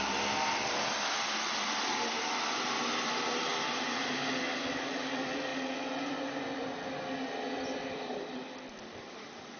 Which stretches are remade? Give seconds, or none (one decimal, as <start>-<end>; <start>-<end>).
0.0-3.5; 4.3-5.5; 7.8-9.6